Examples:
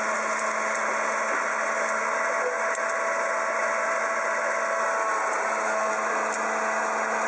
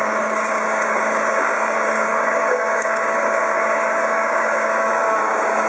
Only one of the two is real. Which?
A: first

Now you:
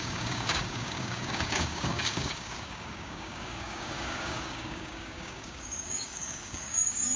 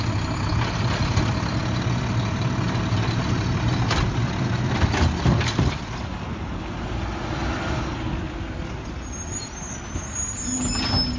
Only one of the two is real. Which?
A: second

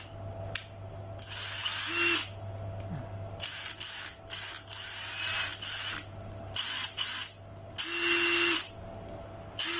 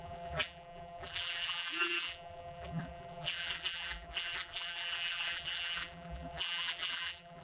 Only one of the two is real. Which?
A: first